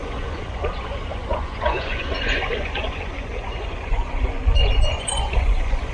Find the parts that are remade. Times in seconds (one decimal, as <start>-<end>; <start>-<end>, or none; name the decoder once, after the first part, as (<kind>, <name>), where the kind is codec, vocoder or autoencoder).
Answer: 0.0-5.9 (vocoder, Vocos)